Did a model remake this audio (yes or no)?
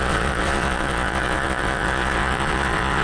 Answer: yes